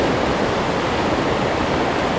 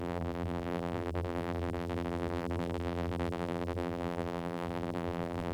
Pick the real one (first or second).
first